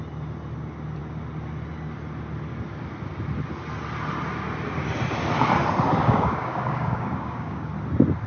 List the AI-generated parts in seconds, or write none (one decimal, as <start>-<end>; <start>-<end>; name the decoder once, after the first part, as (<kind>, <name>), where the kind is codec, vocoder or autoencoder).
6.0-7.7 (codec, DAC)